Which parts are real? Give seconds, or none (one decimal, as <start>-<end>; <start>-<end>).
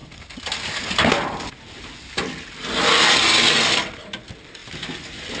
0.0-5.4